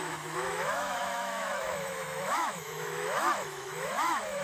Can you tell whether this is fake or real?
fake